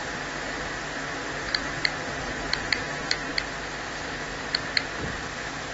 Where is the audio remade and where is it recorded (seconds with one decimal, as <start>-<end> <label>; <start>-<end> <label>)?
0.0-5.7 recorded

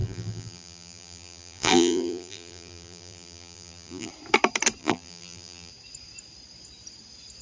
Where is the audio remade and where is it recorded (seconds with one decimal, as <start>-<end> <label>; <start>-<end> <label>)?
0.0-4.1 remade; 4.1-4.8 recorded; 4.8-5.7 remade; 5.7-7.4 recorded